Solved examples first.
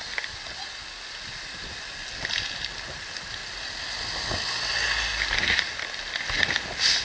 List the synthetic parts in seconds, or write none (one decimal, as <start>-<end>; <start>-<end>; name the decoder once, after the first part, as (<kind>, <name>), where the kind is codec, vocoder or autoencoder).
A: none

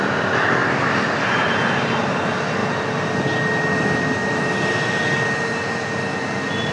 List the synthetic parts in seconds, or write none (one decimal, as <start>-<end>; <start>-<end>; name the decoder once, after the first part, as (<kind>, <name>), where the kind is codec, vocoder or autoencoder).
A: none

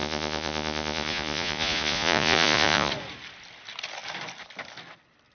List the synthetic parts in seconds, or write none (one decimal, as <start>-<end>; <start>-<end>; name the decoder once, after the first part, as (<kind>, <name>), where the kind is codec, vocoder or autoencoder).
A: 0.0-2.9 (vocoder, Vocos)

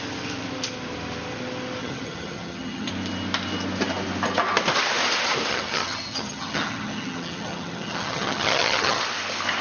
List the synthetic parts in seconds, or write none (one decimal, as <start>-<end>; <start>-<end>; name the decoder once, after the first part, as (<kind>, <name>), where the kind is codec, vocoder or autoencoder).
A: 1.8-2.9 (vocoder, HiFi-GAN); 5.5-9.0

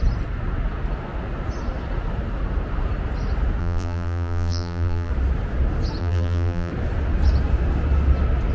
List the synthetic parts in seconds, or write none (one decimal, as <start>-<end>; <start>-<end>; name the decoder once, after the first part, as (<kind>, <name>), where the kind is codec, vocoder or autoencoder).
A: 3.6-5.1 (vocoder, BigVGAN v2); 6.0-6.7

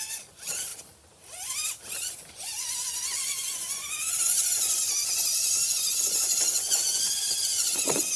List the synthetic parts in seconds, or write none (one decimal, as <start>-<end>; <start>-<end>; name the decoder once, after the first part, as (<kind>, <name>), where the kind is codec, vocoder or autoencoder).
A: 0.0-0.7 (vocoder, Vocos); 2.3-8.2

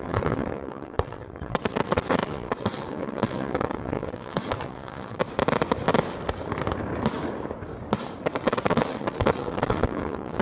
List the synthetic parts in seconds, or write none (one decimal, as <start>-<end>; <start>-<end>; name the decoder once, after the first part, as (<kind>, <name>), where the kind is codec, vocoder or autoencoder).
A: 0.0-5.2 (vocoder, WaveNeXt); 8.2-10.4